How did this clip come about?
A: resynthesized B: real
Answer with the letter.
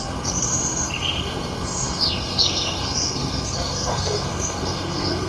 A